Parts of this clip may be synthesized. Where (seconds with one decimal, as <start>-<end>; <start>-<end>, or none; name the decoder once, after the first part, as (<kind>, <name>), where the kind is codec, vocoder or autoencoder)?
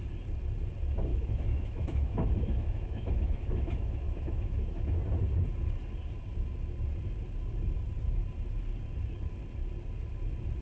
1.1-5.0 (autoencoder, DAC-VAE)